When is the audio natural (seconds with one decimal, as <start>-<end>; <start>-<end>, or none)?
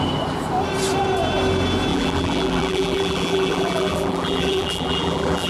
0.0-1.9